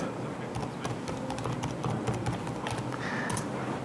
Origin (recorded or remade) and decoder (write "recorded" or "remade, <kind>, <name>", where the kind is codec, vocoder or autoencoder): recorded